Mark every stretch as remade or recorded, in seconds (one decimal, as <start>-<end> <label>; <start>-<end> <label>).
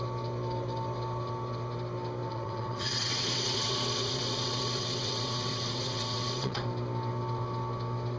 0.0-2.3 recorded; 2.3-6.6 remade; 6.6-8.2 recorded